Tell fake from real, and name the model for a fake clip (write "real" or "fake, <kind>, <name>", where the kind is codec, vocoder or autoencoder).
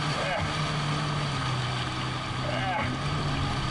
real